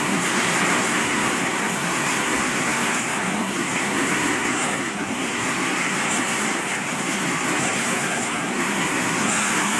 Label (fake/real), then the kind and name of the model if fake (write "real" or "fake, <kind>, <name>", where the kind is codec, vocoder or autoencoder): fake, codec, SNAC